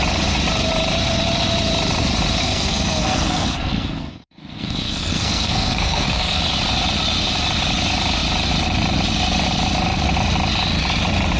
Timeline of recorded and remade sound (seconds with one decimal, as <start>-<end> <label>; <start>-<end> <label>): 0.0-2.4 recorded; 2.4-6.4 remade; 6.4-11.4 recorded